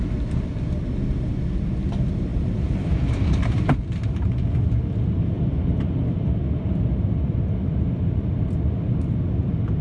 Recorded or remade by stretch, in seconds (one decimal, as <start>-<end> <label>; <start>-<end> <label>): 0.0-2.3 recorded; 2.3-6.3 remade; 6.3-9.8 recorded